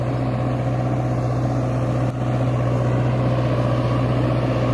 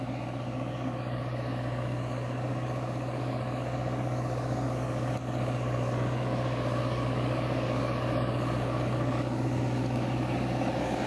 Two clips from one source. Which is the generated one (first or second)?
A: second